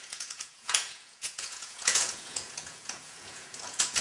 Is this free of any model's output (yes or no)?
no